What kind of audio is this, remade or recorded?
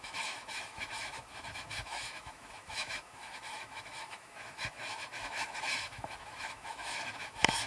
remade